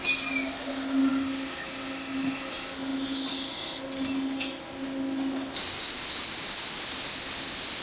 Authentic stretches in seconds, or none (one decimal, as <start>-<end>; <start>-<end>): 0.0-7.8